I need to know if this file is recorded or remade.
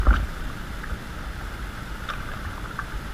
remade